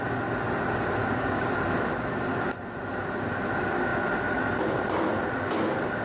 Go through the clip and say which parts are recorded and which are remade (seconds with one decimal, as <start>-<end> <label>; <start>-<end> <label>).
0.0-1.0 recorded; 1.0-1.5 remade; 1.5-6.0 recorded